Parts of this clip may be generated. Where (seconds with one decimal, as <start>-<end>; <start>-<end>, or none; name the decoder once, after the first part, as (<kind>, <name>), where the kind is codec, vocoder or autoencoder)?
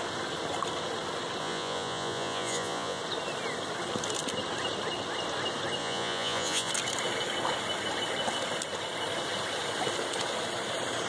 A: 1.4-3.0 (vocoder, Vocos); 5.8-6.7